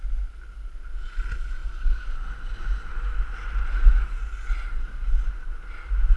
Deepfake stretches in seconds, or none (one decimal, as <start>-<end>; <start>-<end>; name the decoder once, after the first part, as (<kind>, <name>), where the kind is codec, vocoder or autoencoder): none